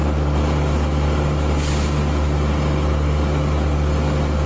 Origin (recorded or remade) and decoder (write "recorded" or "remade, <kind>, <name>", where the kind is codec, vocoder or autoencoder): recorded